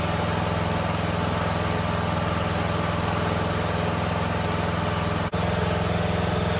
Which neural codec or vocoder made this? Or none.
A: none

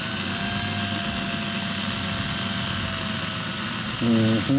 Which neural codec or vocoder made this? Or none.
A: none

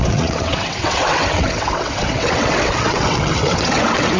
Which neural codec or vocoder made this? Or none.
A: vocoder, WaveNeXt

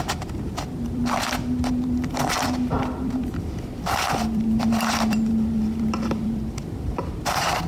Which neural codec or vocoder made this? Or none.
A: vocoder, BigVGAN v2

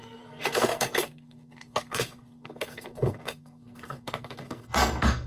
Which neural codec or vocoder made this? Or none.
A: codec, SNAC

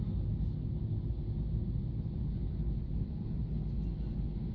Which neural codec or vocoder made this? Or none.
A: none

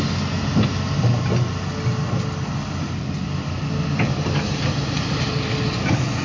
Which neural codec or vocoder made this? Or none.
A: none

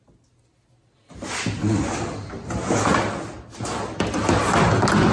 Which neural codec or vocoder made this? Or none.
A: none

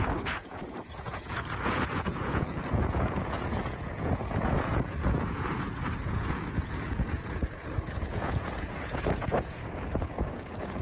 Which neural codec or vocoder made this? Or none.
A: vocoder, Vocos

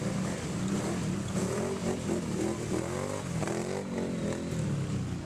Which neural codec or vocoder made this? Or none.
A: none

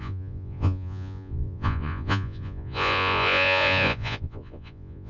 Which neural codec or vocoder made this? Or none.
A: vocoder, Vocos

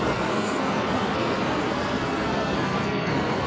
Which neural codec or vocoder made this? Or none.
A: codec, SNAC